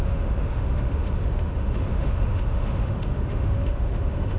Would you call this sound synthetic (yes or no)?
yes